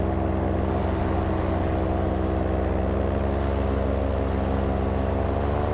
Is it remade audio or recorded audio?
recorded